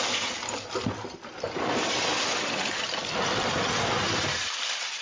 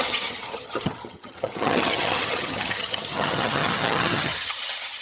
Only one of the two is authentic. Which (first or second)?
first